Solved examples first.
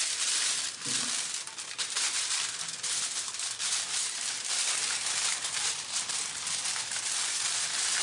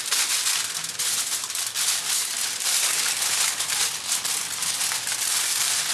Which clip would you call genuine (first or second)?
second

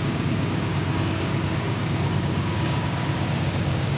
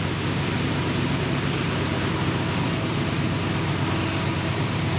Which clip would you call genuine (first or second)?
second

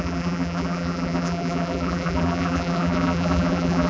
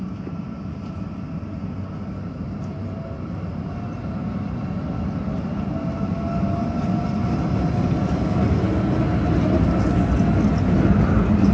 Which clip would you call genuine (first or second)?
second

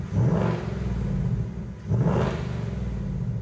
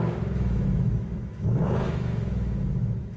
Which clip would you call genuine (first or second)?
first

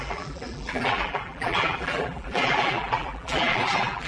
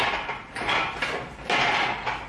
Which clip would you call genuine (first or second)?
second